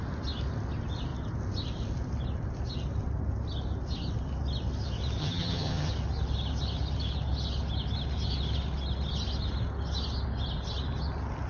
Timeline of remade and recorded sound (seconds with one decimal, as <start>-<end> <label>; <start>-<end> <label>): 0.0-5.2 recorded; 5.2-5.9 remade; 5.9-11.5 recorded

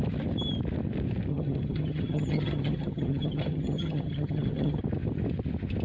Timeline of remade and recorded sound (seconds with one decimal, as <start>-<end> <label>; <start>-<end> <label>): 0.0-1.3 recorded; 1.3-4.8 remade; 4.8-5.8 recorded

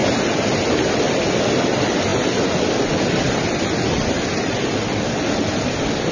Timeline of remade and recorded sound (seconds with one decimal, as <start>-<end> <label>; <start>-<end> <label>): 0.0-6.1 recorded

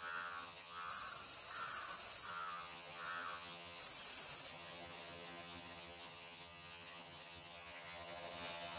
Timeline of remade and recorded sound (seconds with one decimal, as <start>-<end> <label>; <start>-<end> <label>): 0.0-0.9 remade; 0.9-2.3 recorded; 2.3-3.8 remade; 3.8-4.5 recorded; 4.5-8.8 remade

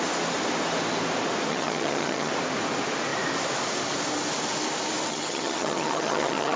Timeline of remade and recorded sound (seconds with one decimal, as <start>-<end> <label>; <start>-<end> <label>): 0.0-1.5 recorded; 1.5-2.3 remade; 2.3-5.1 recorded; 5.1-6.6 remade

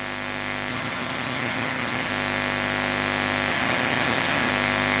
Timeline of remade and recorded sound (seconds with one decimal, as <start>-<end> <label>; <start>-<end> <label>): 0.0-0.7 recorded; 0.7-2.1 remade; 2.1-3.5 recorded; 3.5-4.5 remade; 4.5-5.0 recorded

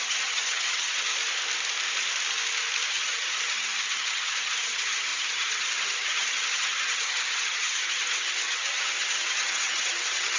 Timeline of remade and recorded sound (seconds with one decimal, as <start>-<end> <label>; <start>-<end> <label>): 0.0-1.1 remade; 1.1-2.9 recorded; 2.9-10.4 remade

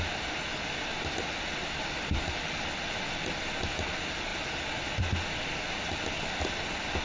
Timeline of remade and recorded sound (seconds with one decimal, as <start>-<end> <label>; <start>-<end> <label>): 0.0-7.0 recorded